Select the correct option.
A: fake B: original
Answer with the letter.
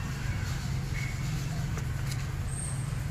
B